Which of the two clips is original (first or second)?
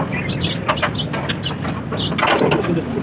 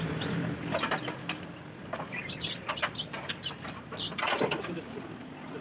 first